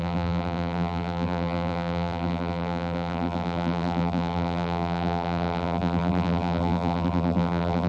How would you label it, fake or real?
fake